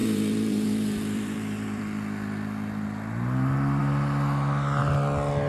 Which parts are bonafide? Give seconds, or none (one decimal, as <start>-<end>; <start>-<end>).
1.8-5.5